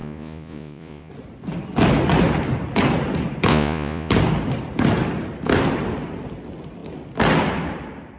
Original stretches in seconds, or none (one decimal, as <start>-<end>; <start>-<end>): 1.1-3.5; 4.1-8.2